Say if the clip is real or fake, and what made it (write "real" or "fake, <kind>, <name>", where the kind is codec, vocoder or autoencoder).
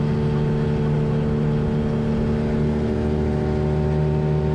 real